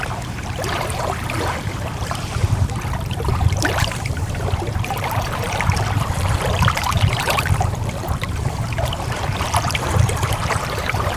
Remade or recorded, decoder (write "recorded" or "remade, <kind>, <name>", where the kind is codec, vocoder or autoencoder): remade, vocoder, BigVGAN v2